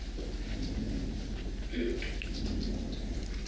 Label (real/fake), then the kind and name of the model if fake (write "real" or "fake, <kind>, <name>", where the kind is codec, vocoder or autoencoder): real